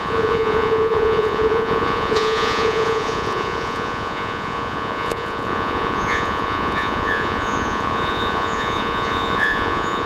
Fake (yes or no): yes